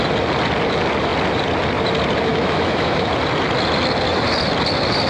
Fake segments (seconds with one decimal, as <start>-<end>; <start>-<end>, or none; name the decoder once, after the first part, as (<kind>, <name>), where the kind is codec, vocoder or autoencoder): 2.3-3.1 (autoencoder, DAC-VAE)